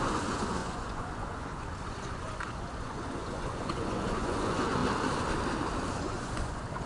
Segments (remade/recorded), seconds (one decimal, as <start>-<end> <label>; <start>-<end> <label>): 0.0-4.8 remade; 4.8-5.9 recorded; 5.9-6.9 remade